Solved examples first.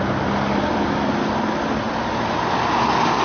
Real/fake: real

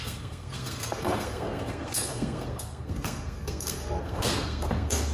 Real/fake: fake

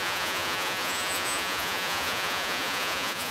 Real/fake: fake